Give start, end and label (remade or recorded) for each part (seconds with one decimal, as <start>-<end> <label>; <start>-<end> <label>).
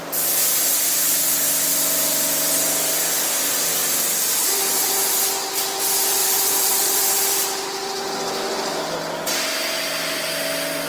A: 0.0-1.2 remade; 1.2-1.7 recorded; 1.7-4.7 remade; 4.7-6.2 recorded; 6.2-7.3 remade; 7.3-10.9 recorded